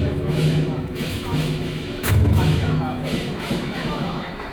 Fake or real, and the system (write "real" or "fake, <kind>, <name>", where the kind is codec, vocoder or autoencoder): fake, autoencoder, DAC-VAE